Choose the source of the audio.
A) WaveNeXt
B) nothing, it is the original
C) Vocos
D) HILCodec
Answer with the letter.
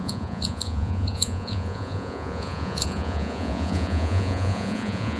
C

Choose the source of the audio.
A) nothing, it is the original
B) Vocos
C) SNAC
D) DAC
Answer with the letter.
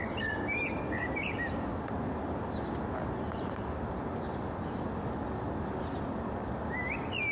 A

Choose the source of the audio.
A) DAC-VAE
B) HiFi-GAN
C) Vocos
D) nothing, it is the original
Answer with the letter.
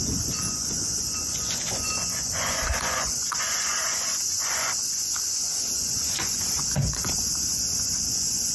C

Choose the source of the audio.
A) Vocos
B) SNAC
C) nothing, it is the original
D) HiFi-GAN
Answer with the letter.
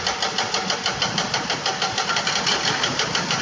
C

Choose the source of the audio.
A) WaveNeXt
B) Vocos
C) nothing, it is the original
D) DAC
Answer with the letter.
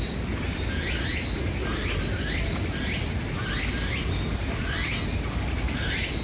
C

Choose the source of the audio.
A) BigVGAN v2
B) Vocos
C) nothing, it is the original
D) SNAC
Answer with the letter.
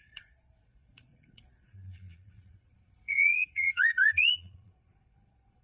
B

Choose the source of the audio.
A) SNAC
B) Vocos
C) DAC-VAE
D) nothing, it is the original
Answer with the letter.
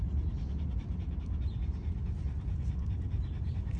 D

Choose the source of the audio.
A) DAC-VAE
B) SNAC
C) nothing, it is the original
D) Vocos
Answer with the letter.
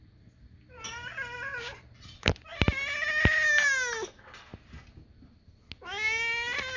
C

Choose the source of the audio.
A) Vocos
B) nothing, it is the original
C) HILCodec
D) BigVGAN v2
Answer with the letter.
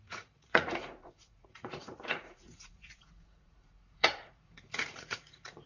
A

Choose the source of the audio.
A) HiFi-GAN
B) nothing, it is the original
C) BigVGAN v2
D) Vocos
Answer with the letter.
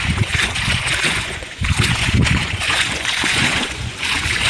D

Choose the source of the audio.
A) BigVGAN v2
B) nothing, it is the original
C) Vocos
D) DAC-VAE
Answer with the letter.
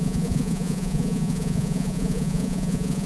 C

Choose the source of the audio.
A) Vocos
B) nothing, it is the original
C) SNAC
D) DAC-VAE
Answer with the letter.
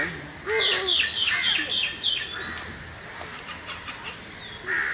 B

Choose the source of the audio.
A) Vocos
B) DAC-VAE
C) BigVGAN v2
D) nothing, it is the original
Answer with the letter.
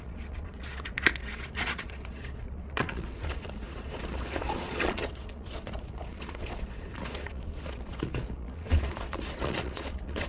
A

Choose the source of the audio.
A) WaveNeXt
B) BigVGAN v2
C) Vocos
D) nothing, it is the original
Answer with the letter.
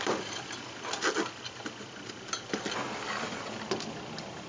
D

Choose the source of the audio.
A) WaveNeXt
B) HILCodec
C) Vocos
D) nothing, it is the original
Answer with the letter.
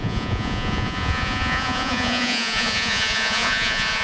C